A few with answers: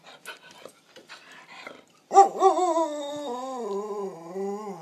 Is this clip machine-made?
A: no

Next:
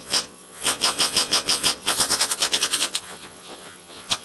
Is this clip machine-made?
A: yes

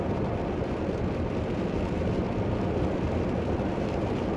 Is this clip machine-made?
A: no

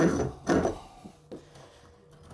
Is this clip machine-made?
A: no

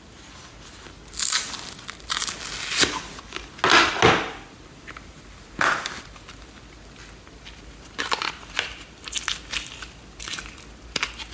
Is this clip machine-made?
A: no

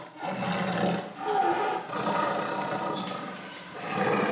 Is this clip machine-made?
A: no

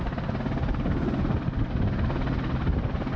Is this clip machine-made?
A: no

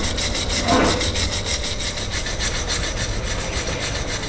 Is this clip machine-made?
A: no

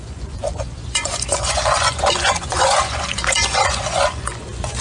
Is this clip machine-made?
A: yes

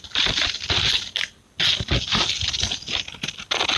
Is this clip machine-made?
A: no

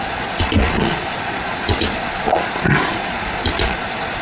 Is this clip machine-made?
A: yes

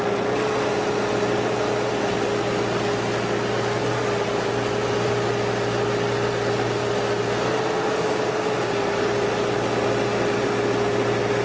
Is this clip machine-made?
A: no